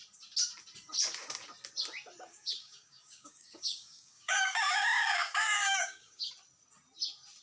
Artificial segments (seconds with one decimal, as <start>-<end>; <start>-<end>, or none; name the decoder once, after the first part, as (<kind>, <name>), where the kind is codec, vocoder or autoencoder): 2.3-6.3 (codec, DAC)